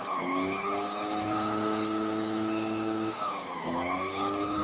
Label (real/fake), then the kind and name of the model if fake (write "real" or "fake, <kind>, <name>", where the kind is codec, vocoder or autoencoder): fake, codec, HILCodec